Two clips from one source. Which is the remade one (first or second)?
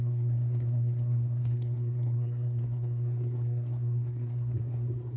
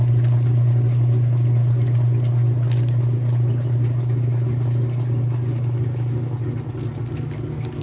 first